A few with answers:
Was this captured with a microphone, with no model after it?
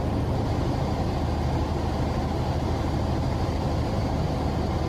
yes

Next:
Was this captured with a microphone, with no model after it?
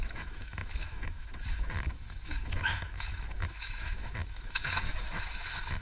no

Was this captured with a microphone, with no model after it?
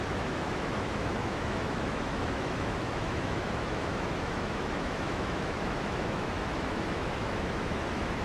no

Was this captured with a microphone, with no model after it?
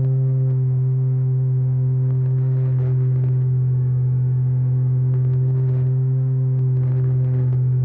no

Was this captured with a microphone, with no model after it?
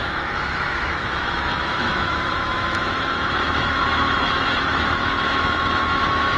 no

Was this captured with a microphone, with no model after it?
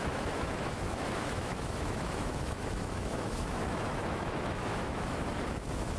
no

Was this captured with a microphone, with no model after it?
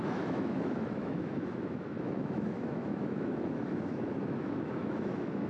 no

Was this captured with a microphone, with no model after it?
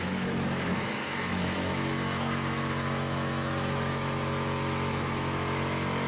no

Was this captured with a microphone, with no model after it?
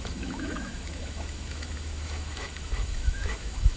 no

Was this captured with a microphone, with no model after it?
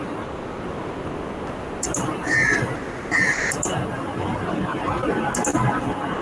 yes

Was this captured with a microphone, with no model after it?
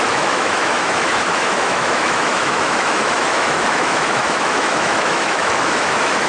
no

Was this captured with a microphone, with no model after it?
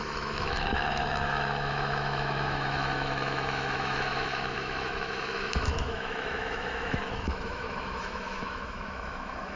no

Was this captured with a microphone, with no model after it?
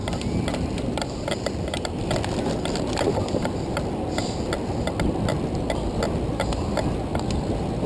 yes